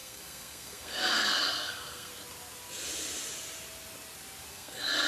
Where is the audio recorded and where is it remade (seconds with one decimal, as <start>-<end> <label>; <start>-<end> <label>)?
0.0-2.1 remade; 2.1-4.5 recorded; 4.5-5.1 remade